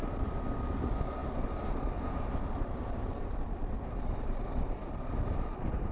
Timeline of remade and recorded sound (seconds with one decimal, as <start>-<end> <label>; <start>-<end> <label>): 0.0-5.9 remade